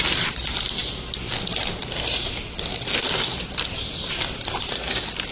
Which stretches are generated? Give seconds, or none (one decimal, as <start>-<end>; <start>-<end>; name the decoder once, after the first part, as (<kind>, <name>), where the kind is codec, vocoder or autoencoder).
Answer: none